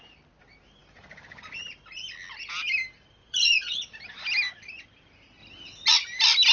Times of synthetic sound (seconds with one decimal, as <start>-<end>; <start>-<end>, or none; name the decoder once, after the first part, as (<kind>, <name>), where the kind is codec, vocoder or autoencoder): 3.2-3.8 (vocoder, Vocos)